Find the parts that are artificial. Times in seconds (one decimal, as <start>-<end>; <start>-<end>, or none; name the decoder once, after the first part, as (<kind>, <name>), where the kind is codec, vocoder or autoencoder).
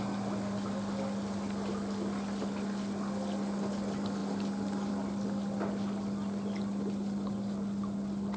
none